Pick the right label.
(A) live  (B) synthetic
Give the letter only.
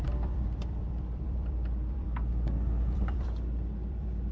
B